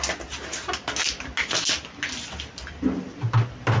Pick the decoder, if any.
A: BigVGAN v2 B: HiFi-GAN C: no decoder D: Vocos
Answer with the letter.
C